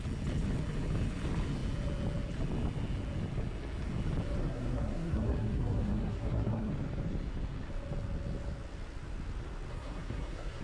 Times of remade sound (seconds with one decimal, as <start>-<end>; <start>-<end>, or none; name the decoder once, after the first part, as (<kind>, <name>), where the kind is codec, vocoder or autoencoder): 4.4-6.7 (codec, SNAC); 9.7-10.6